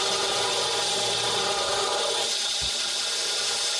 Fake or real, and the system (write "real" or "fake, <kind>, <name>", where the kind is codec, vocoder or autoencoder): real